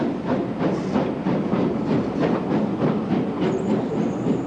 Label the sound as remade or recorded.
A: recorded